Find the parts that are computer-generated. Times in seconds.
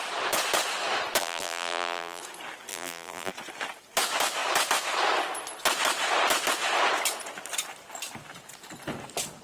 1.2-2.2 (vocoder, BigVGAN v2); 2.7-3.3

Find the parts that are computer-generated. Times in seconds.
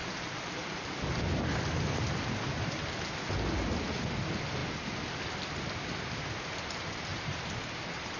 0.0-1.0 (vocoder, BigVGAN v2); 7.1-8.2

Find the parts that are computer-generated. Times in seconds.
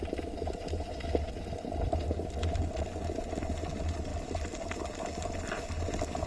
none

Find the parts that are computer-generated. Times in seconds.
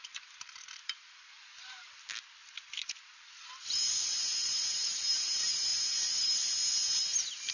0.0-1.4 (vocoder, BigVGAN v2)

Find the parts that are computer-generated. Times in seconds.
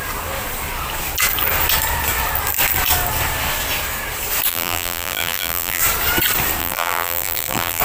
4.5-5.8 (vocoder, BigVGAN v2); 6.6-7.8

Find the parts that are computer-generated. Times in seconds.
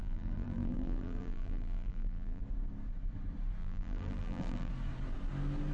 0.0-2.4 (vocoder, BigVGAN v2); 3.6-4.7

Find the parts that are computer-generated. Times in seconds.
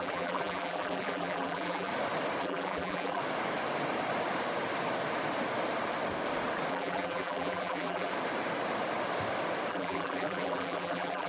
0.0-1.9 (vocoder, BigVGAN v2); 2.4-3.2; 6.7-8.1; 9.7-11.3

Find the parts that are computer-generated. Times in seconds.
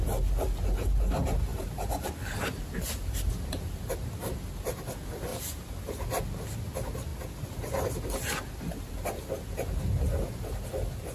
1.5-3.9 (vocoder, BigVGAN v2); 5.3-5.9